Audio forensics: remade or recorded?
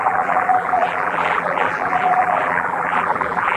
remade